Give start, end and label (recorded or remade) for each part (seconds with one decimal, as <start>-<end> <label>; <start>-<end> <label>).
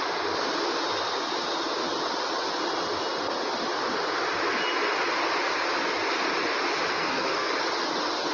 0.0-6.9 recorded; 6.9-7.5 remade; 7.5-8.3 recorded